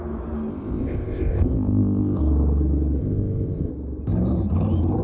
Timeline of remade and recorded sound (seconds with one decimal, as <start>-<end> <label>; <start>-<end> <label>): 0.0-0.5 recorded; 0.5-2.2 remade; 2.2-3.0 recorded; 3.0-3.7 remade; 3.7-5.0 recorded